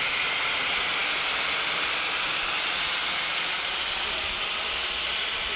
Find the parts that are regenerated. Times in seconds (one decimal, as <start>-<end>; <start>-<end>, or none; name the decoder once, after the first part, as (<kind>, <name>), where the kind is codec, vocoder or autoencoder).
none